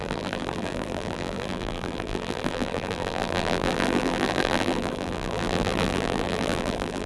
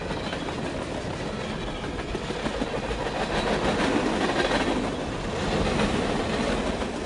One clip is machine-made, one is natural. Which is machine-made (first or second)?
first